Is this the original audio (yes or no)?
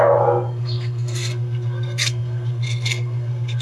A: no